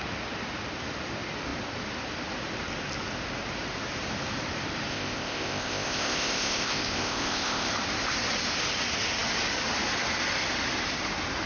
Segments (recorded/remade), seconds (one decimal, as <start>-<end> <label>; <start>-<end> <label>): 0.0-4.9 recorded; 4.9-7.7 remade; 7.7-11.5 recorded